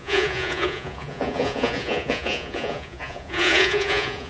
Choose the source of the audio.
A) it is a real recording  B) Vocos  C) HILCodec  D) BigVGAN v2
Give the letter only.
B